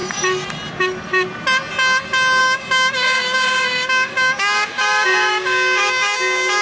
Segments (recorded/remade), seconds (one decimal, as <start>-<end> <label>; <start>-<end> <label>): 0.0-2.4 recorded; 2.4-6.6 remade